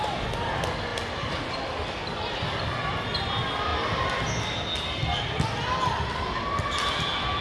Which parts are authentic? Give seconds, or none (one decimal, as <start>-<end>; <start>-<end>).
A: 0.0-7.4